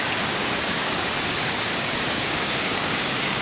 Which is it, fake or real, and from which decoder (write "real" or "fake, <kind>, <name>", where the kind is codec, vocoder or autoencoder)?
fake, codec, DAC